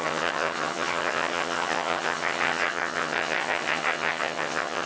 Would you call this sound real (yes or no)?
no